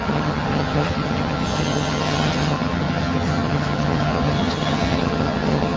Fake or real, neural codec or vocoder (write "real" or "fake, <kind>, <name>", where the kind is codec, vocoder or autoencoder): fake, vocoder, HiFi-GAN